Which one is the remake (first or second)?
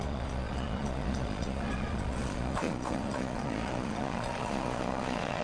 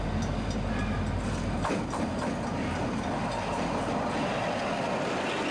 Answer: first